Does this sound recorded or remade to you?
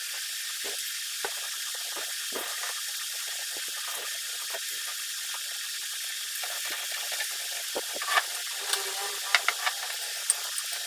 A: recorded